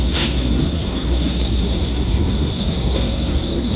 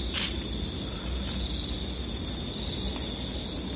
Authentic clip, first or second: second